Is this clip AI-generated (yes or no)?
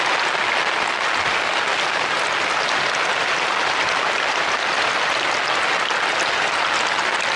no